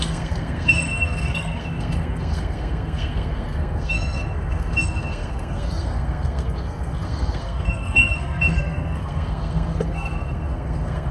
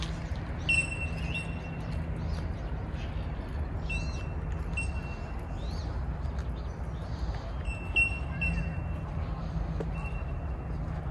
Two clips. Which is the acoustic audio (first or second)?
second